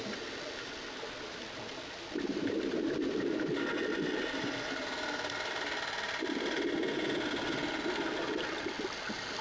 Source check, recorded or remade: recorded